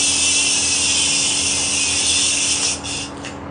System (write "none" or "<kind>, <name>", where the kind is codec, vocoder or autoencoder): none